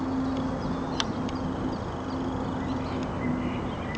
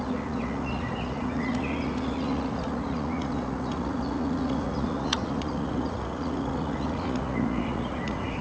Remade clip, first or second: second